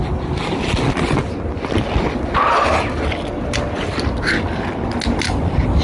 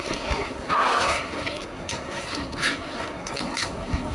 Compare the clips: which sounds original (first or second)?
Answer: first